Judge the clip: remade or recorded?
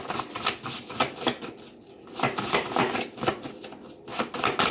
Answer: recorded